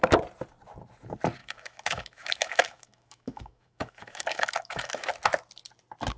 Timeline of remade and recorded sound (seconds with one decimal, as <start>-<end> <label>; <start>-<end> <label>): 0.0-1.4 recorded; 1.4-5.1 remade; 5.1-6.2 recorded